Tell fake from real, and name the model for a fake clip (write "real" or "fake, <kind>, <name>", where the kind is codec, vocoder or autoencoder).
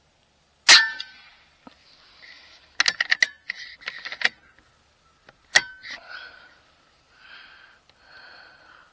real